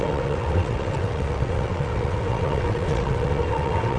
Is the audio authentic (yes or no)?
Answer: no